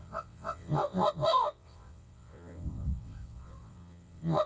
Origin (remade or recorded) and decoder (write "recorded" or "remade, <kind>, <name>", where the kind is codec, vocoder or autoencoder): remade, vocoder, WaveNeXt